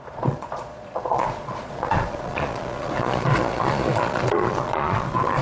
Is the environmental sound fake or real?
fake